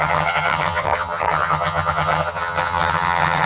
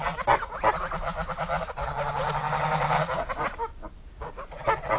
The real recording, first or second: second